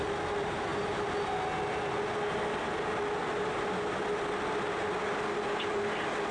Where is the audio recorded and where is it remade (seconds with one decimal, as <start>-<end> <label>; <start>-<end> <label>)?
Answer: 0.0-6.3 recorded